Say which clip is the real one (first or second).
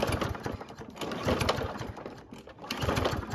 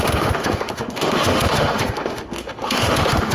first